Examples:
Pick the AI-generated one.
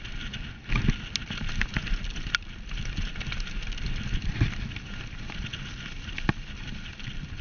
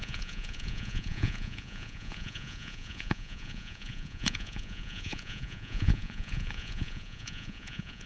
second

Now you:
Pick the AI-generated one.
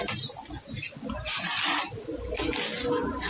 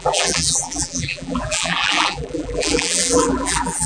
second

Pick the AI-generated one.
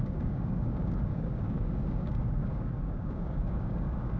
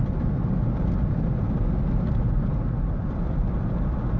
first